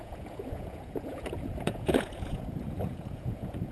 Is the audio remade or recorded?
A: remade